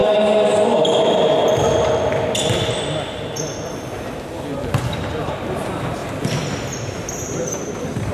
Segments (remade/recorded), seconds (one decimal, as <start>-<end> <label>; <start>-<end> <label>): 0.0-6.0 recorded; 6.0-8.1 remade